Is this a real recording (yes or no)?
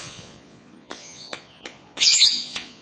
no